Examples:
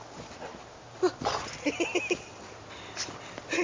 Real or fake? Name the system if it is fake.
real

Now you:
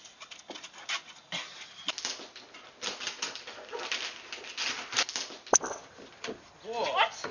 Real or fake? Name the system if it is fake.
real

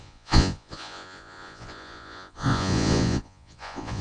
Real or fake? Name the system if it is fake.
fake, vocoder, Vocos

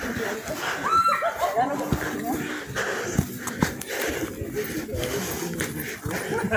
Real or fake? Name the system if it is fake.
real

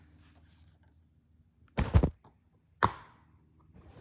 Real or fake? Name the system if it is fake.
real